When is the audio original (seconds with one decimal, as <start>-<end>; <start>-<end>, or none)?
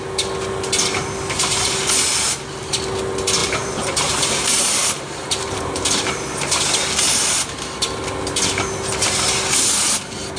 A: 0.0-3.4; 6.6-10.4